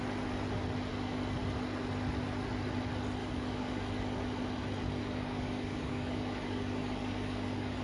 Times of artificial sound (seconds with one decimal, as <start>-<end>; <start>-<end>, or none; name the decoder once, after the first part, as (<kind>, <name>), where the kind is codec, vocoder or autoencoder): 3.2-3.8 (codec, DAC); 5.0-7.8